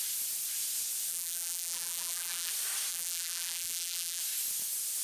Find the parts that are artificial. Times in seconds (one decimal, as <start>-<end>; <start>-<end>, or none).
1.1-2.5; 2.9-4.2